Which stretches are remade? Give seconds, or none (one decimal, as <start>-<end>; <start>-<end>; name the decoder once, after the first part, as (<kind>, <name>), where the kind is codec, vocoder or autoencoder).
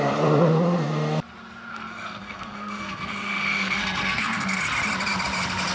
1.7-4.6 (codec, SNAC)